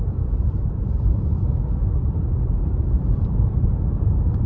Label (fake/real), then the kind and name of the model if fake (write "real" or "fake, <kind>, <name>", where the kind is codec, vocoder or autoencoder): fake, vocoder, BigVGAN v2